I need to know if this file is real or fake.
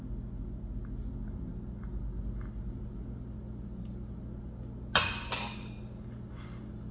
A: real